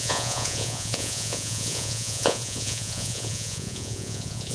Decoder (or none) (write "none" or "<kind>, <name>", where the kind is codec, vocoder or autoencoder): vocoder, Vocos